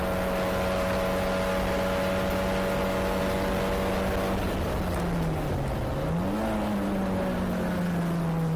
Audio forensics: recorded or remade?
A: recorded